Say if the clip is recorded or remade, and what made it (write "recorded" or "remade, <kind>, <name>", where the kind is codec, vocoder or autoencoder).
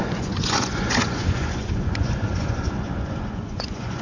remade, vocoder, Vocos